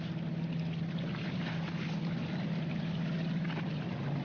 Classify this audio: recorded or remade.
recorded